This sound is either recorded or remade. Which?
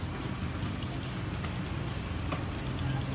recorded